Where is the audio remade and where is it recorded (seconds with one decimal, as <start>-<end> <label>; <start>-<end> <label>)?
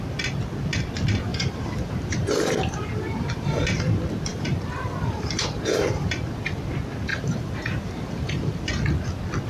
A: 0.0-1.3 recorded; 1.3-3.9 remade; 3.9-4.3 recorded; 4.3-6.4 remade; 6.4-7.1 recorded; 7.1-8.7 remade; 8.7-9.5 recorded